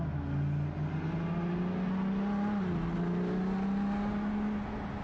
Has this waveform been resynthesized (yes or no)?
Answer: no